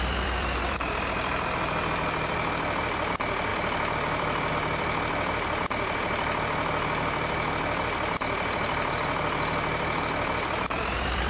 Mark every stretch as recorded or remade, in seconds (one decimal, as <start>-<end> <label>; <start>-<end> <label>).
0.0-11.3 remade